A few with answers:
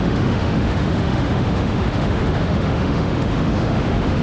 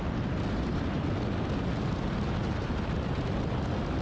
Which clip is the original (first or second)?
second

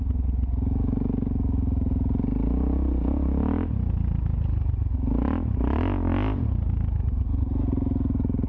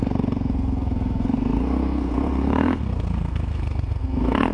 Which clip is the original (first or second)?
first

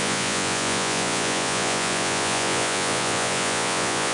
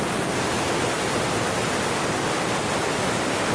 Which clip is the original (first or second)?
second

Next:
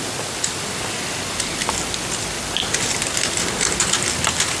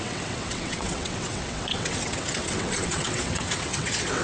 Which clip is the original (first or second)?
first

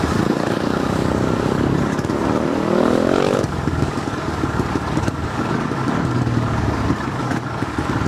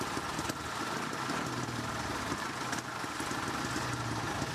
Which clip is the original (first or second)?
second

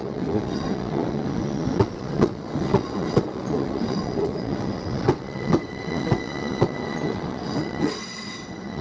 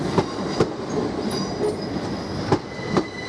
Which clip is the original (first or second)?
second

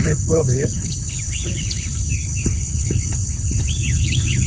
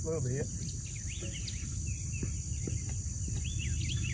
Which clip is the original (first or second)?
second